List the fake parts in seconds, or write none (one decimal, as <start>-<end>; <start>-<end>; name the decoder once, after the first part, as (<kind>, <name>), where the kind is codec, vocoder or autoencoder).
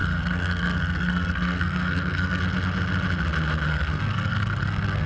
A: 0.0-2.4 (codec, SNAC); 3.7-5.1